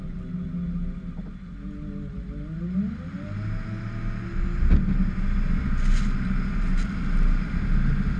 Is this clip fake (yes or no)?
no